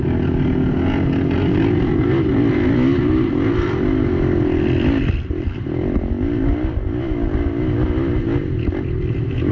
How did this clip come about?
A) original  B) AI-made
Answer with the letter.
A